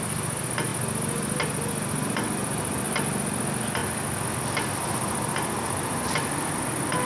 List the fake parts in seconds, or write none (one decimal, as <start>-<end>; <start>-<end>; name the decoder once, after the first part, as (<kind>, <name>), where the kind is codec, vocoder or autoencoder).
none